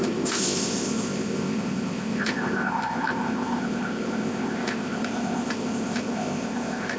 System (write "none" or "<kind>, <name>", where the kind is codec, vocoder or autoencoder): codec, ZipCodec